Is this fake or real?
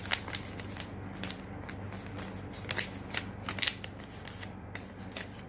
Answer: real